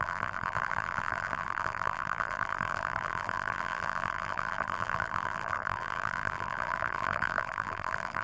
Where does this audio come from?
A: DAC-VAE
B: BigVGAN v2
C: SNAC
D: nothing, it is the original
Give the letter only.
B